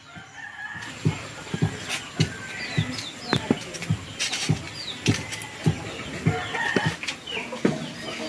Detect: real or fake real